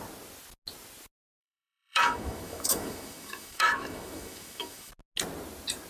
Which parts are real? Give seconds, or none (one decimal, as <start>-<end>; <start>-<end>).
0.0-1.4; 4.9-5.9